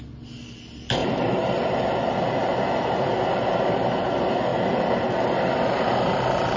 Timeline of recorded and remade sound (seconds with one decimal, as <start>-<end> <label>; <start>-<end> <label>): 0.0-1.0 recorded; 1.0-3.1 remade; 3.1-4.5 recorded; 4.5-5.1 remade; 5.1-6.6 recorded